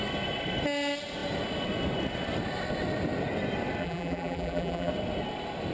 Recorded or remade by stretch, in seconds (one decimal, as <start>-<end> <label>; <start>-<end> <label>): 0.0-3.8 recorded; 3.8-4.9 remade; 4.9-5.7 recorded